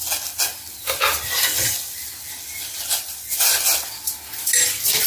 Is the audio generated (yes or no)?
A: no